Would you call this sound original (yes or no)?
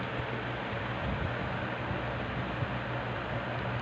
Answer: yes